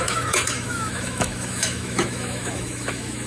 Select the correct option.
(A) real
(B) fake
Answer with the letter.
B